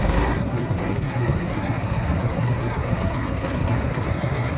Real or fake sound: fake